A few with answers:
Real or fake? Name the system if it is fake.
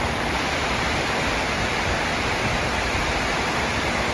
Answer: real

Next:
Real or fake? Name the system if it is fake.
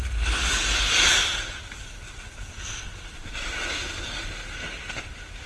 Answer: real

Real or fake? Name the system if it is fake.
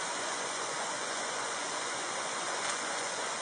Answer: fake, vocoder, Vocos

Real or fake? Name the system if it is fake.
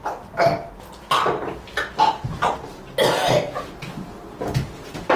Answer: real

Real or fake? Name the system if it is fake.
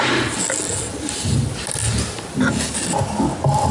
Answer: real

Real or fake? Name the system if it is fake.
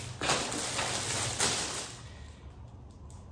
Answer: real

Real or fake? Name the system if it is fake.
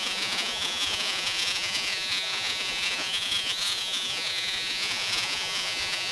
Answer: fake, vocoder, Vocos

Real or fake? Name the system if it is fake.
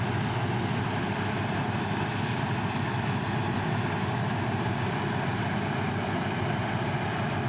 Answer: real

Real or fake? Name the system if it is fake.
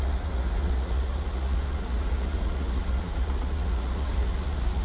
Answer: fake, vocoder, Vocos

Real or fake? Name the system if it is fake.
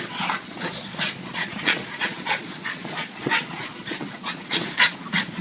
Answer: fake, vocoder, Vocos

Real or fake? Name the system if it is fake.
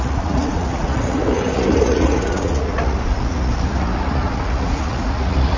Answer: fake, vocoder, Vocos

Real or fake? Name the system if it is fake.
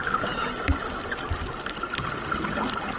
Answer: real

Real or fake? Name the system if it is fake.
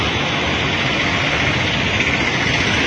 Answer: real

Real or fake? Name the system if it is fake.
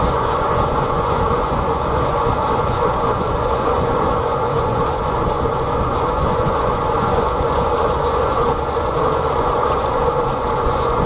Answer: fake, vocoder, Vocos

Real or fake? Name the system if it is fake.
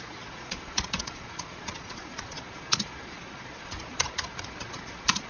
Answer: fake, vocoder, Vocos